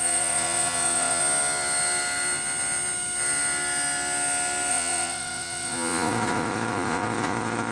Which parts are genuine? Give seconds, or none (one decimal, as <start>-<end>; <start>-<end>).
1.2-4.7